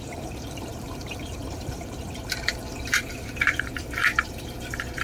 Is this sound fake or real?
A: fake